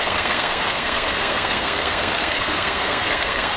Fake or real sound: fake